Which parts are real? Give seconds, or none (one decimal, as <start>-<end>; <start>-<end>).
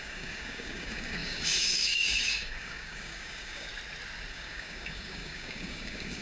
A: 3.7-4.3